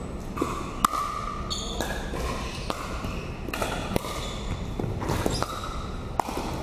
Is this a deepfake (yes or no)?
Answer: no